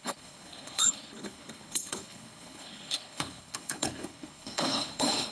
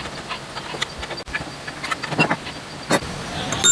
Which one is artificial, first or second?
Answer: first